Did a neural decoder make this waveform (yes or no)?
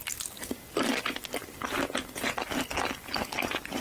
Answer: no